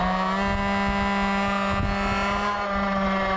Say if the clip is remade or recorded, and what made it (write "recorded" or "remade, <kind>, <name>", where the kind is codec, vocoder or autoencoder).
recorded